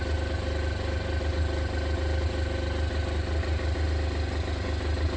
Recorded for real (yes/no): yes